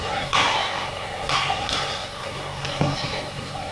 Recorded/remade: remade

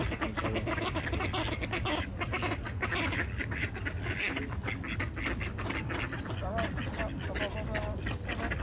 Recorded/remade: recorded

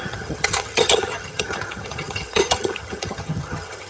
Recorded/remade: remade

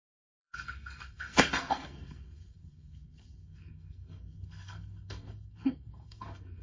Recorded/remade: remade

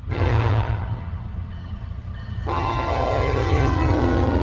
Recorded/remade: remade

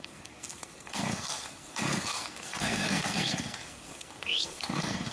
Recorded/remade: remade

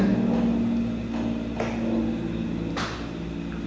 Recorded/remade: recorded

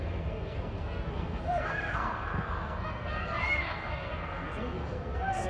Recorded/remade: remade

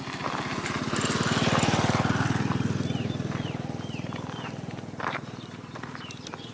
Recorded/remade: recorded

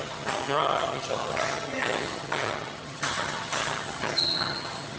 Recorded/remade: remade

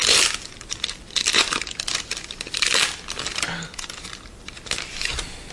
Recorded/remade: recorded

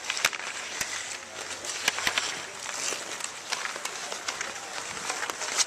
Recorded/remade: recorded